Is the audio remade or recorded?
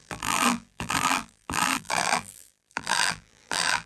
remade